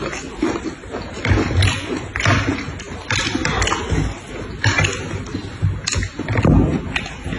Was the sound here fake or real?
real